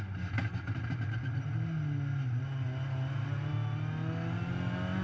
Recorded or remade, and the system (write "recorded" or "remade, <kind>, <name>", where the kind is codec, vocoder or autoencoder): recorded